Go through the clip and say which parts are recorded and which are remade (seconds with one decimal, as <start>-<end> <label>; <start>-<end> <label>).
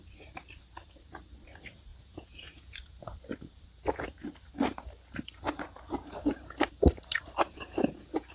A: 0.0-1.9 recorded; 1.9-3.0 remade; 3.0-8.3 recorded